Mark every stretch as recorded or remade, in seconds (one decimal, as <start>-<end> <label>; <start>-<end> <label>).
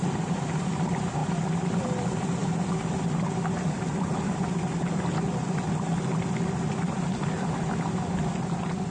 0.0-8.9 recorded